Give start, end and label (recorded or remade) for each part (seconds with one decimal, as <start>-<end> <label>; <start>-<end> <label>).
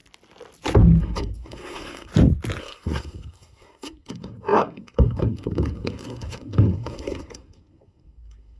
0.0-1.0 recorded; 1.0-2.1 remade; 2.1-2.6 recorded; 2.6-8.6 remade